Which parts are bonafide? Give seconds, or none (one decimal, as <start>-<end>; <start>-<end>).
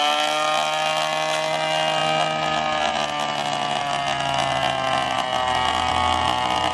0.0-6.7